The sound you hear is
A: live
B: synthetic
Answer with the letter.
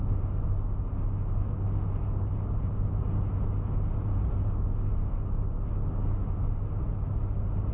A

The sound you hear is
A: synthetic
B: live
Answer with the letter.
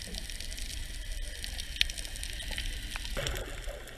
B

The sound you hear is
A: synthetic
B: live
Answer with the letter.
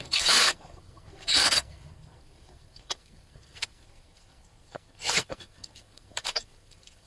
A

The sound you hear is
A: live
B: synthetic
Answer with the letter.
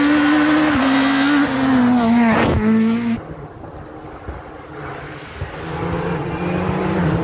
A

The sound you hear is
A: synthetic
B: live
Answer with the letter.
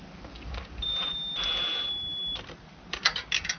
B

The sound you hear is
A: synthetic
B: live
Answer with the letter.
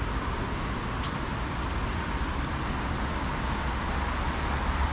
B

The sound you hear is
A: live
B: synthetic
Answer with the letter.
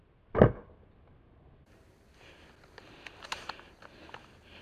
A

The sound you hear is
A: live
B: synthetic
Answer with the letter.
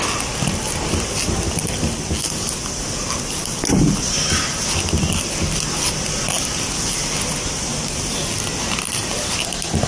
A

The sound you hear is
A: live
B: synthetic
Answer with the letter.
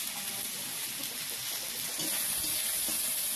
A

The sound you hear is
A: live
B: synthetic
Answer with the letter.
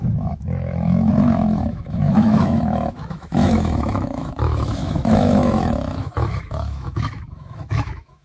B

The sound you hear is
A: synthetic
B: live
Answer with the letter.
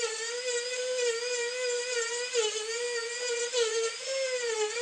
B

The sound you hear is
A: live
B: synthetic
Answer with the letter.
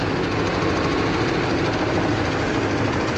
A